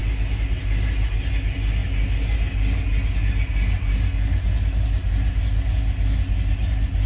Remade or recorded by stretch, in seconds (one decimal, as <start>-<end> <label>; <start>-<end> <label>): 0.0-7.1 recorded